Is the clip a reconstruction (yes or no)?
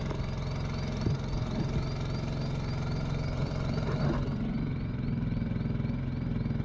no